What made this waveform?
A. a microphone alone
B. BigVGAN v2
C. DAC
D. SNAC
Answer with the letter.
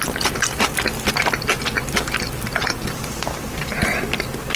A